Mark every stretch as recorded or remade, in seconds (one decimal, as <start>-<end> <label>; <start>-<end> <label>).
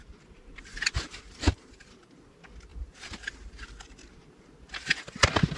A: 0.0-2.7 recorded; 2.7-4.1 remade; 4.1-5.6 recorded